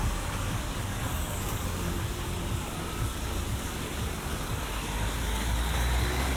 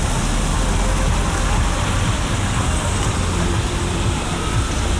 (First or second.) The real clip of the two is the second